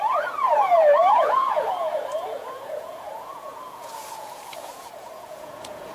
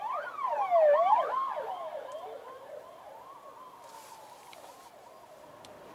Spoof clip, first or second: first